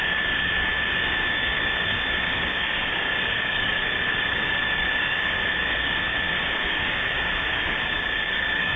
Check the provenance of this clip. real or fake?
fake